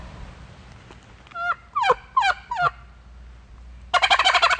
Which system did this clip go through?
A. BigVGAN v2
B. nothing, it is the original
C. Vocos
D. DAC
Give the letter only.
B